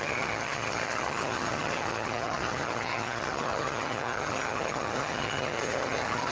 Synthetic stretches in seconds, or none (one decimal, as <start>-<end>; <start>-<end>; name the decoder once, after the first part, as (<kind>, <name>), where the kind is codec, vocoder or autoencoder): 0.0-6.3 (vocoder, HiFi-GAN)